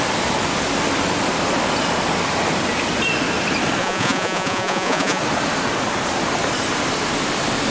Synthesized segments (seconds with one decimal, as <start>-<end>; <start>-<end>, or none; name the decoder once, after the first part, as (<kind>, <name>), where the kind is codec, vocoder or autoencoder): 3.8-5.2 (vocoder, Vocos)